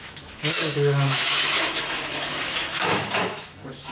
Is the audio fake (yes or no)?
yes